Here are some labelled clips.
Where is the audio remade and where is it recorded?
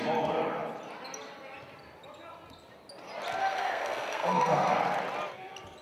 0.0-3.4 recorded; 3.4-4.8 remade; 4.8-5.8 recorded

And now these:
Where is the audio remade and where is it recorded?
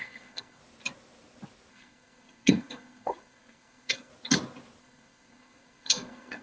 0.0-0.6 remade; 0.6-1.7 recorded; 1.7-4.1 remade; 4.1-4.8 recorded; 4.8-6.4 remade